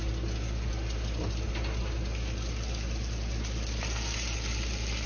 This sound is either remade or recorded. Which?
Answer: recorded